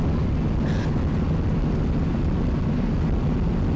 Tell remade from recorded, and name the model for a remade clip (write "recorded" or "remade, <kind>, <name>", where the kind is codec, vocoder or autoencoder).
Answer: recorded